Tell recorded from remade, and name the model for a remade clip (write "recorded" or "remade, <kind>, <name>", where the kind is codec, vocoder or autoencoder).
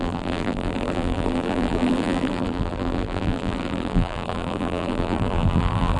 remade, vocoder, BigVGAN v2